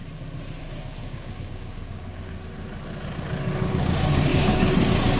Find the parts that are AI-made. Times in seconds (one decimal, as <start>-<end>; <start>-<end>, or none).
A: 0.6-2.3; 3.7-5.2